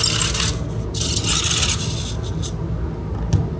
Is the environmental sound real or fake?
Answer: real